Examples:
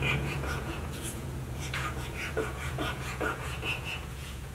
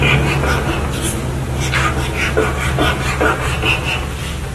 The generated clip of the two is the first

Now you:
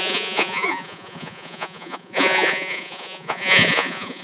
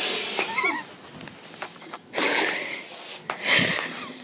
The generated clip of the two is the first